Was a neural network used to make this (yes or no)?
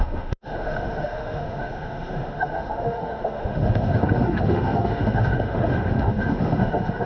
yes